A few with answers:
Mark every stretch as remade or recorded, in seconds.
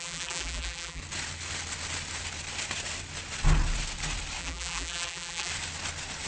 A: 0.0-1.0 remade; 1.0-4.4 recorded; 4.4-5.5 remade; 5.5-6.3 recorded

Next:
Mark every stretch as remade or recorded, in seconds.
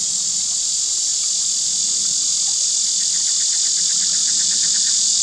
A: 0.0-4.2 recorded; 4.2-5.2 remade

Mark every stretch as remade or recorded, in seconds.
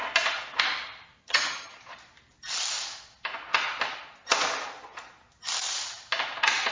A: 0.0-1.2 recorded; 1.2-1.8 remade; 1.8-6.7 recorded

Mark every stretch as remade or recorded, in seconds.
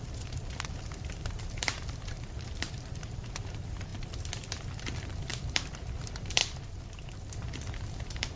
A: 0.0-6.4 remade; 6.4-7.3 recorded; 7.3-8.4 remade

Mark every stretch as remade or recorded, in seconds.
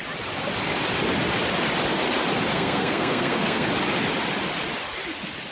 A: 0.0-2.5 recorded; 2.5-3.7 remade; 3.7-5.5 recorded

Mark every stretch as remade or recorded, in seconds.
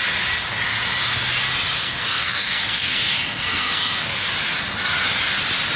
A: 0.0-1.8 recorded; 1.8-4.3 remade; 4.3-5.8 recorded